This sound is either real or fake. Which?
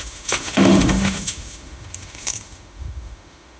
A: fake